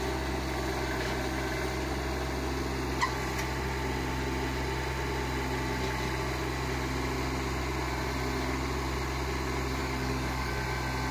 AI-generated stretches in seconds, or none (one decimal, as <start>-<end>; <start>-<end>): 9.8-10.5

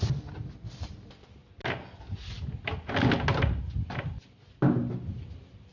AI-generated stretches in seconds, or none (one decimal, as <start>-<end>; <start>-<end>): none

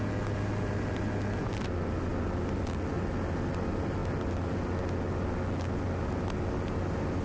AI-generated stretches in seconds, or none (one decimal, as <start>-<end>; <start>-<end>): none

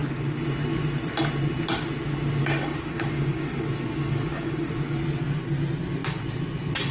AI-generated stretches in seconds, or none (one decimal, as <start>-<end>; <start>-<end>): 2.4-4.7

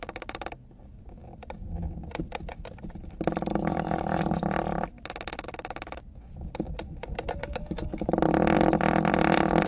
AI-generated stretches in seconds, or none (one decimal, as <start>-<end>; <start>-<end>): 3.5-4.2; 7.4-8.1

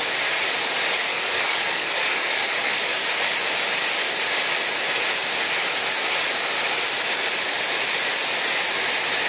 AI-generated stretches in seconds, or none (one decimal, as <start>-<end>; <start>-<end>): 1.1-2.7

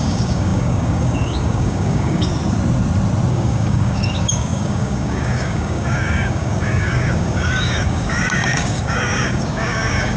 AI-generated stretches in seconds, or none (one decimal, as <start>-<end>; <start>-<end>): 0.0-2.3; 3.3-10.2